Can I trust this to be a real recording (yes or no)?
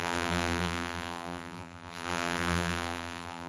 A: no